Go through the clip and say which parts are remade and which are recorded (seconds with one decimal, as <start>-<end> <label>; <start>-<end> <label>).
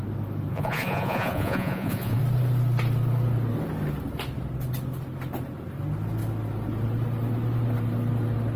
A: 0.0-0.5 recorded; 0.5-2.2 remade; 2.2-8.6 recorded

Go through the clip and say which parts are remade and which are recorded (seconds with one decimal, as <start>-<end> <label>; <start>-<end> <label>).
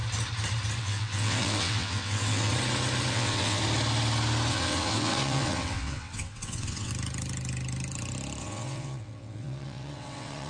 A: 0.0-0.8 recorded; 0.8-2.5 remade; 2.5-3.1 recorded; 3.1-3.6 remade; 3.6-4.5 recorded; 4.5-6.9 remade; 6.9-8.4 recorded; 8.4-10.5 remade